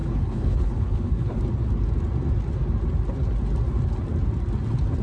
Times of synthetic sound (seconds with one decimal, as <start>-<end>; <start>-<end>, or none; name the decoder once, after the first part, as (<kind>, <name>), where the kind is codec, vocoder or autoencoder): 0.0-1.4 (codec, HILCodec)